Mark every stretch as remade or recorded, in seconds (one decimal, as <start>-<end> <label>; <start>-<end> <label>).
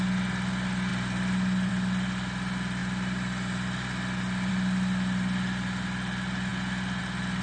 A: 0.0-7.4 recorded